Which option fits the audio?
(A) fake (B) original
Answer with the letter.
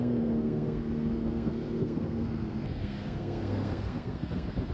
A